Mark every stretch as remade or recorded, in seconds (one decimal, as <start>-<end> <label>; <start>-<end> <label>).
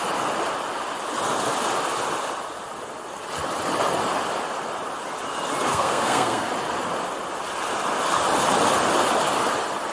0.0-5.7 recorded; 5.7-6.5 remade; 6.5-9.9 recorded